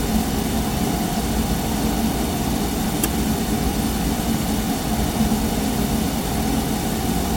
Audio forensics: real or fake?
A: real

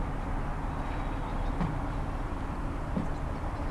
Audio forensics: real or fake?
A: real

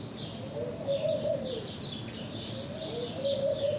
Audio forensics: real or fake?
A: real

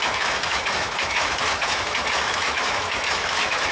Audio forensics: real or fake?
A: fake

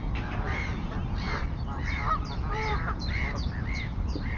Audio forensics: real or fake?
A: fake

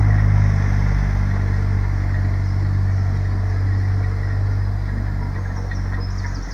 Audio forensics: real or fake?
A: real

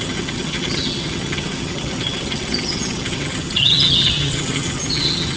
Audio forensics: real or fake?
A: fake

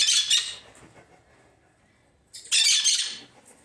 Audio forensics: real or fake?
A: real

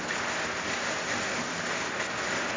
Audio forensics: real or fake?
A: real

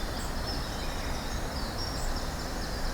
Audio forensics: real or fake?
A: real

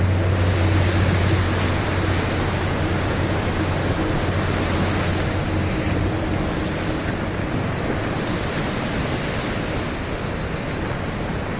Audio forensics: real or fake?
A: real